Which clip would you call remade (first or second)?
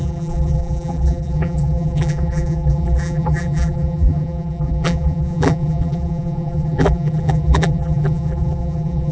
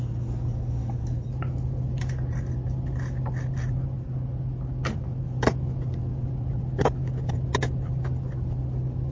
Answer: first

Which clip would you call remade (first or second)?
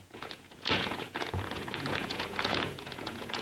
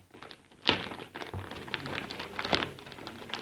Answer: first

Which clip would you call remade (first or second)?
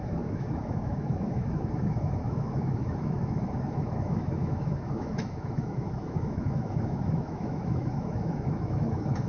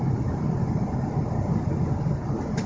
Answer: first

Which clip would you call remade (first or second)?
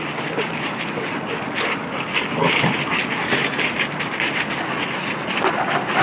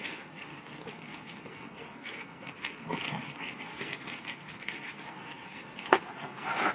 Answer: second